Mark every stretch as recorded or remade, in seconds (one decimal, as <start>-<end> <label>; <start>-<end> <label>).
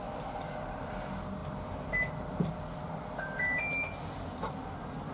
0.0-5.1 recorded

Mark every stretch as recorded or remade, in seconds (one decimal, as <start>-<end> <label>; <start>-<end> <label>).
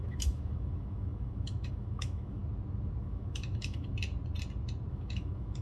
0.0-2.4 remade; 2.4-3.0 recorded; 3.0-3.9 remade; 3.9-4.9 recorded; 4.9-5.6 remade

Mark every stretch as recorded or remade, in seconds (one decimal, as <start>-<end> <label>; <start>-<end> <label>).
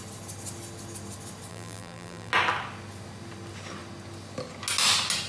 0.0-1.5 recorded; 1.5-2.3 remade; 2.3-5.3 recorded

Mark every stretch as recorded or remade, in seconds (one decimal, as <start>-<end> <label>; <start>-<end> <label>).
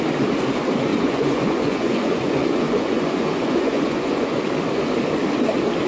0.0-0.9 recorded; 0.9-4.4 remade; 4.4-5.9 recorded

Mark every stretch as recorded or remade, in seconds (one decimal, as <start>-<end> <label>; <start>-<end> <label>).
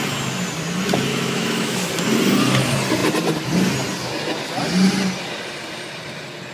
0.0-1.1 recorded; 1.1-1.9 remade; 1.9-6.5 recorded